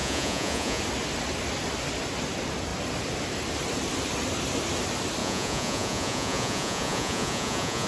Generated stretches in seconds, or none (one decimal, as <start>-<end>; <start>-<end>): 0.0-0.8; 5.2-7.9